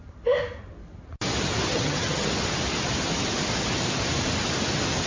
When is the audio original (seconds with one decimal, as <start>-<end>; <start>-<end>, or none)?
0.0-1.7; 2.3-5.1